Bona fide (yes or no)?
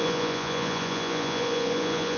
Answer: no